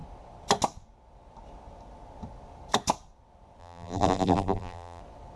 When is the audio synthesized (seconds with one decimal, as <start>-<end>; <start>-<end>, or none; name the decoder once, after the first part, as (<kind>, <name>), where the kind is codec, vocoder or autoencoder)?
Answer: 3.6-5.0 (vocoder, BigVGAN v2)